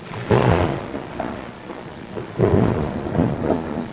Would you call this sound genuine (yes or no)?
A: no